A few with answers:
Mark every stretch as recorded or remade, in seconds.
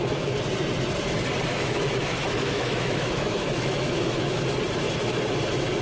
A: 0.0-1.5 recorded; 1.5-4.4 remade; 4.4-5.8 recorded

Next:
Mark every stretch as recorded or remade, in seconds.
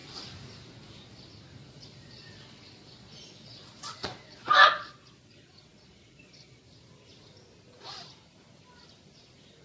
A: 0.0-1.6 recorded; 1.6-6.6 remade; 6.6-9.6 recorded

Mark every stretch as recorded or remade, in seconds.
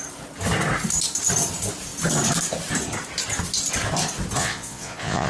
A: 0.0-4.4 recorded; 4.4-5.3 remade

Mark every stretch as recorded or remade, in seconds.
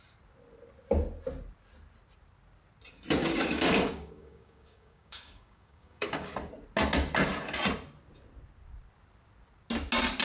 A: 0.0-3.2 recorded; 3.2-6.3 remade; 6.3-10.2 recorded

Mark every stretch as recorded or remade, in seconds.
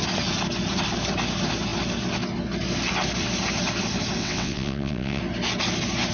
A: 0.0-4.2 recorded; 4.2-5.2 remade; 5.2-6.1 recorded